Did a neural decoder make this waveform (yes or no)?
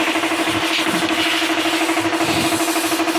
no